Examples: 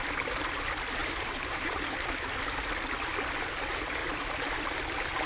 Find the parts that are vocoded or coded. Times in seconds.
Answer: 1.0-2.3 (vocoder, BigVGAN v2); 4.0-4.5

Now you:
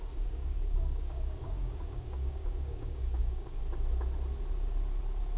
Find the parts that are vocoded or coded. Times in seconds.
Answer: 0.4-3.6 (codec, DAC)

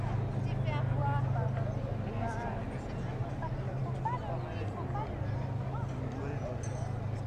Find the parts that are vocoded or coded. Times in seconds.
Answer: 3.2-3.8 (vocoder, BigVGAN v2)

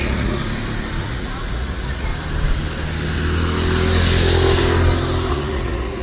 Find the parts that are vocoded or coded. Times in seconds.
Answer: 0.0-0.4 (vocoder, Vocos); 1.0-2.1; 5.3-6.0

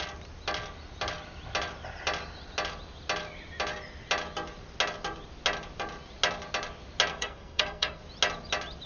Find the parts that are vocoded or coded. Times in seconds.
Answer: 7.1-8.0 (codec, SNAC)